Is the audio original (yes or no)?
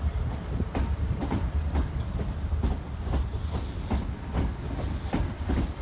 yes